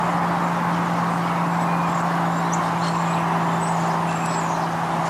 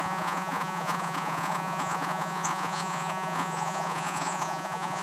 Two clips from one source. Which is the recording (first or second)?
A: first